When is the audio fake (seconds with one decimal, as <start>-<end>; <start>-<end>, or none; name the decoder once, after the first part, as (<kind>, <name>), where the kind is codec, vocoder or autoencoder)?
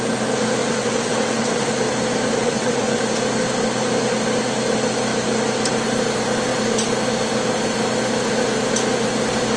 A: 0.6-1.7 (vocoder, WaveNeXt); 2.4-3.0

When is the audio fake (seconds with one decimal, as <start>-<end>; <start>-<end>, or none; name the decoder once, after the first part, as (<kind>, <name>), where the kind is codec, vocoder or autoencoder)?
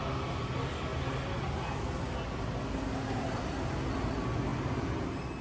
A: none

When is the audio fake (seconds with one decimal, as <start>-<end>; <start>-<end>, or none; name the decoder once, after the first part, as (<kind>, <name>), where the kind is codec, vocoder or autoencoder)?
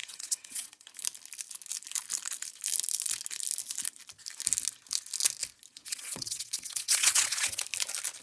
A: 0.0-0.9 (vocoder, WaveNeXt); 5.7-7.6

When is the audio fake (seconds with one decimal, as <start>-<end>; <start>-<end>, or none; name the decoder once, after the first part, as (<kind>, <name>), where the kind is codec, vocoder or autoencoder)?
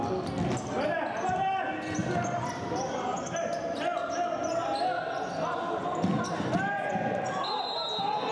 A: none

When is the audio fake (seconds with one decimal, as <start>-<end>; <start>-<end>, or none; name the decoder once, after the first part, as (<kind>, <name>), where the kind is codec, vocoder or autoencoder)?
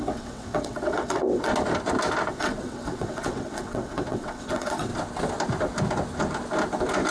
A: 0.0-1.5 (vocoder, WaveNeXt); 2.3-4.9